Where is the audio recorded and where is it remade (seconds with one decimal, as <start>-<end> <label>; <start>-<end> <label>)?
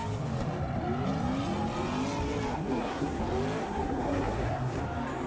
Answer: 0.0-2.5 recorded; 2.5-3.2 remade; 3.2-3.6 recorded; 3.6-4.8 remade; 4.8-5.3 recorded